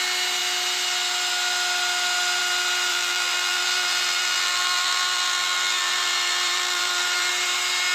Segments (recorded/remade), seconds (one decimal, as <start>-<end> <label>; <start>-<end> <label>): 0.0-2.9 recorded; 2.9-7.3 remade; 7.3-7.9 recorded